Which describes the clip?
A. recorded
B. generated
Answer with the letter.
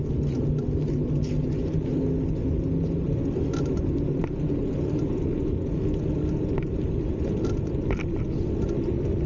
A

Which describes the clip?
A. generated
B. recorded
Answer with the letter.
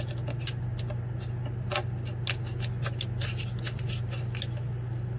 B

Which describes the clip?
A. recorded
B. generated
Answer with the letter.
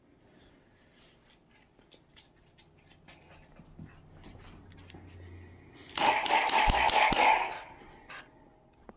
A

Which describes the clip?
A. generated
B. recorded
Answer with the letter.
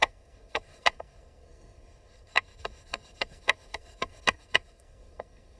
A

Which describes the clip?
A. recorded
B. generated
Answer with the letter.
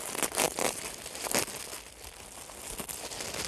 A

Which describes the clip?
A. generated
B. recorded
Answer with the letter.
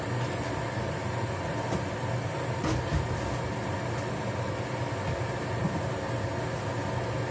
B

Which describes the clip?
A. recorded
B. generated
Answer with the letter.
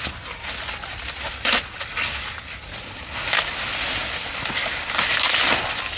A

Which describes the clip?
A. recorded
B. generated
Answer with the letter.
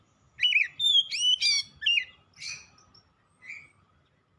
A